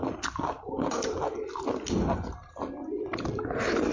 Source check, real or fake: real